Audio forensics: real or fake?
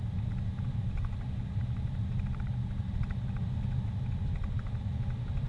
real